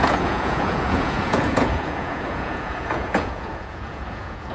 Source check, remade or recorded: remade